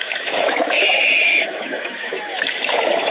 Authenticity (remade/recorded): remade